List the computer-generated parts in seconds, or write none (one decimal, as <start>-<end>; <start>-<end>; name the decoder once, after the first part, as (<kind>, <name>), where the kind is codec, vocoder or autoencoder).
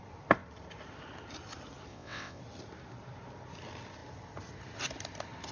1.9-2.4 (vocoder, WaveNeXt)